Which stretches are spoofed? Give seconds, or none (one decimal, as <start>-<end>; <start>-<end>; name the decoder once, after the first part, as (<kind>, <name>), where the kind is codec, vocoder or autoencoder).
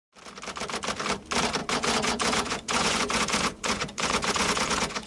1.6-5.1 (vocoder, Vocos)